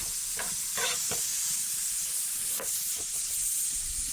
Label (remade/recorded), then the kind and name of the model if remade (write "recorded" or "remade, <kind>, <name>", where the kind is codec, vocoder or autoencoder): recorded